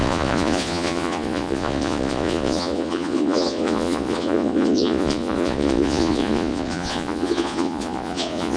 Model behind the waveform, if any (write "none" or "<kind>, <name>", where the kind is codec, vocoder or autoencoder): vocoder, Vocos